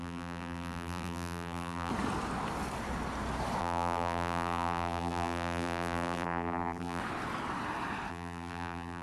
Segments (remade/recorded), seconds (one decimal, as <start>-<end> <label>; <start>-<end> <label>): 0.0-1.9 remade; 1.9-3.6 recorded; 3.6-7.0 remade; 7.0-8.1 recorded; 8.1-9.0 remade